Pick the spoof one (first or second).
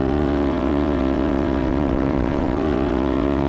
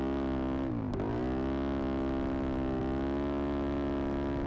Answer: first